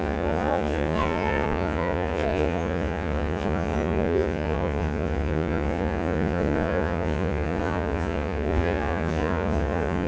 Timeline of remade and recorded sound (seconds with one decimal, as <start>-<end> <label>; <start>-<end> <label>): 0.0-10.1 remade